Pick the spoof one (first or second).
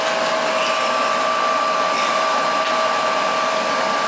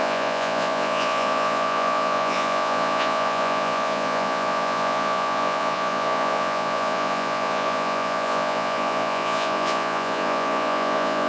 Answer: second